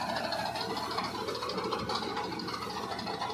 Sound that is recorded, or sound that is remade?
recorded